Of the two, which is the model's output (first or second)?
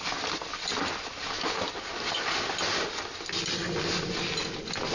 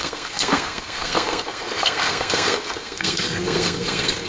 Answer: second